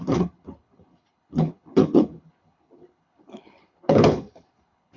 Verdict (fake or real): fake